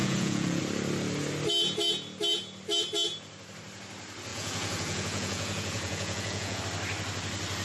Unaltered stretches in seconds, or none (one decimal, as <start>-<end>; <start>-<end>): 0.6-4.3; 6.6-7.6